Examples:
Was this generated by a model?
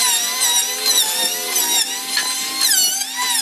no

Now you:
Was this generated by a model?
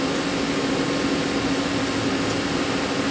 no